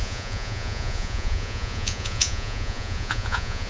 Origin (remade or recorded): remade